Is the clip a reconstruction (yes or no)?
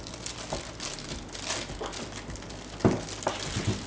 no